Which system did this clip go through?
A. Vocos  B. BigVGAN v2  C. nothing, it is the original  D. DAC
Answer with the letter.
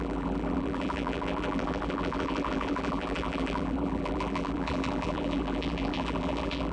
B